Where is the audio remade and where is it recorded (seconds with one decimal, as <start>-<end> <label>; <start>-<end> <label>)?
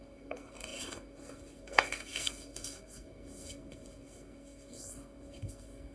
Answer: 0.0-5.9 remade